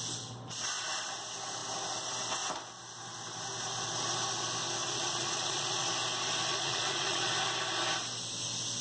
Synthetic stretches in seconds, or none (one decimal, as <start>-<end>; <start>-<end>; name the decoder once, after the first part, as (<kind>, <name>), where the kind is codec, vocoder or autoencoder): 4.8-5.9 (vocoder, Vocos); 6.5-7.3